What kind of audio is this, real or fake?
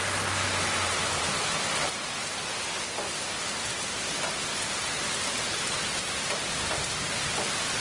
real